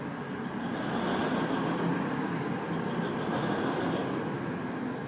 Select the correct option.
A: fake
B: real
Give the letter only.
B